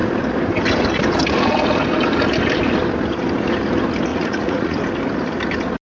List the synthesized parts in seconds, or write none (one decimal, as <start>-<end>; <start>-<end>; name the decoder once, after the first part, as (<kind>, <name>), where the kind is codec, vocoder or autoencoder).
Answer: 4.1-4.8 (vocoder, Vocos)